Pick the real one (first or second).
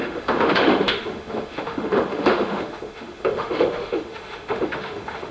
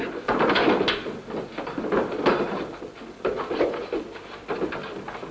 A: second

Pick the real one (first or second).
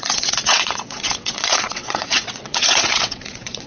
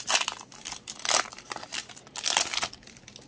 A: second